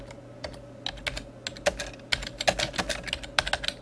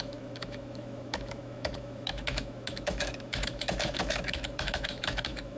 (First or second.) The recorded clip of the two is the first